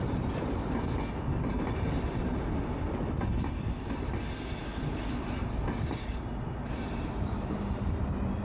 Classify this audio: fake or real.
real